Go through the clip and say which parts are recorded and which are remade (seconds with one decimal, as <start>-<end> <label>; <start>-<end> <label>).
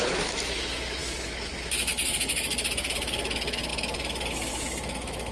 0.0-5.3 remade